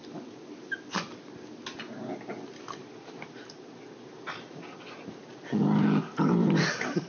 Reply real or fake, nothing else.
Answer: real